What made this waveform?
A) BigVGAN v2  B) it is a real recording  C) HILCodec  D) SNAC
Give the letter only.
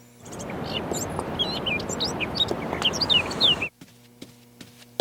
B